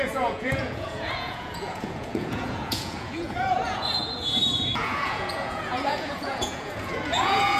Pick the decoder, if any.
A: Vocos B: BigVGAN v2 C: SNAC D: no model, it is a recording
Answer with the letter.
A